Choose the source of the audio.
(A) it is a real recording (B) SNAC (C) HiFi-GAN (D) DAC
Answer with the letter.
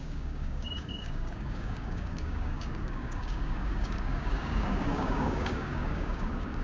D